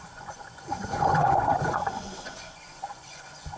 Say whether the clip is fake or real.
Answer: fake